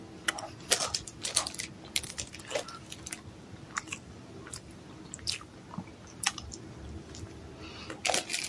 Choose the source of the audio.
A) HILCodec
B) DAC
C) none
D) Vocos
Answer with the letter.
C